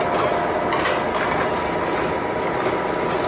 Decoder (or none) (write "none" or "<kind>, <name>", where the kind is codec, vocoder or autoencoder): none